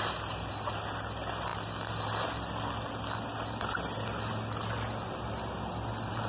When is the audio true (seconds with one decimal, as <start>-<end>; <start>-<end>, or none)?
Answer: 0.0-6.3